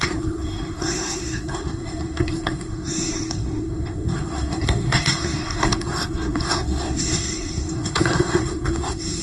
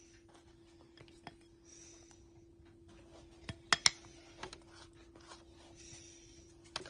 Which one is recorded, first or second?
second